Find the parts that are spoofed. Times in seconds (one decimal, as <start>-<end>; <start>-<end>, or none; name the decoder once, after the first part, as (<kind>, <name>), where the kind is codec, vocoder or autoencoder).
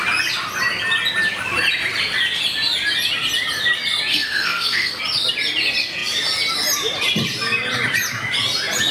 4.1-5.0 (codec, SNAC)